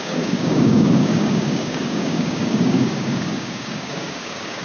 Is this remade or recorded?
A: remade